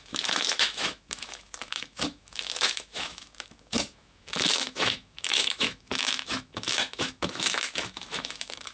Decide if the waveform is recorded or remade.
remade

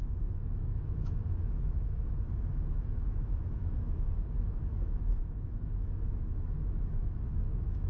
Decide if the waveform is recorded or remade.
remade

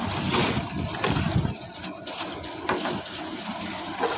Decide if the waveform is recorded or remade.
recorded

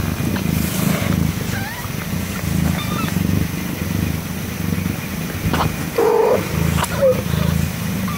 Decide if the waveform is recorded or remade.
recorded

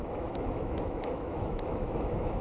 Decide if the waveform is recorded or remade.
remade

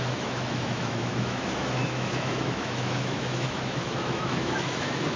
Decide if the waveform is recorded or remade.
remade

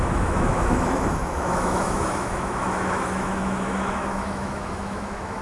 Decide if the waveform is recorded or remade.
remade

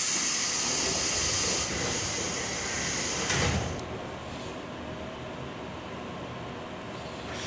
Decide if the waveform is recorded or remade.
recorded